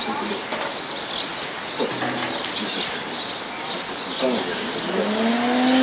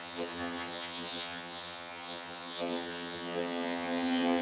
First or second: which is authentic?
first